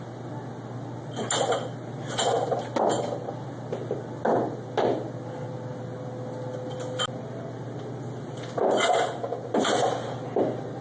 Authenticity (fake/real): real